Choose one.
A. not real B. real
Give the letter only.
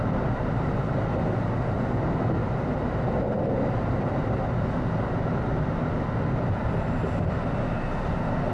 B